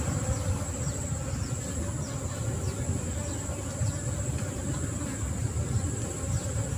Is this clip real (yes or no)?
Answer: yes